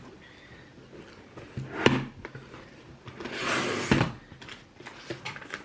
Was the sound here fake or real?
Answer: real